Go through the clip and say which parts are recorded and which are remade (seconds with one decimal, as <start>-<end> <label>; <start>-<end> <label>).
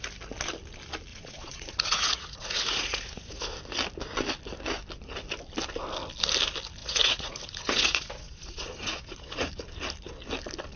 0.0-1.1 recorded; 1.1-3.5 remade; 3.5-6.8 recorded; 6.8-9.5 remade; 9.5-10.8 recorded